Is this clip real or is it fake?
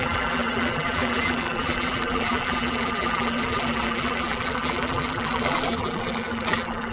fake